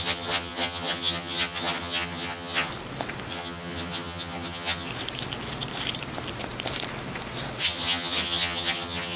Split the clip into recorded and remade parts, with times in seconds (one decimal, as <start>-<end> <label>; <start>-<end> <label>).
0.0-2.7 remade; 2.7-3.3 recorded; 3.3-4.9 remade; 4.9-7.6 recorded; 7.6-9.2 remade